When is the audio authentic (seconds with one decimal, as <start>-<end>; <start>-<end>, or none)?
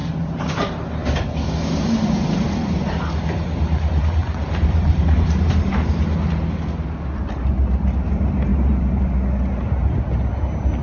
0.6-4.2; 5.9-8.5; 9.0-10.8